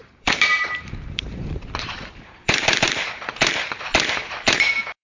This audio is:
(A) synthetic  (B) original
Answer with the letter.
A